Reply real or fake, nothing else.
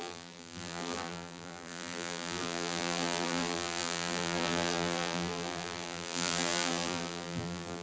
fake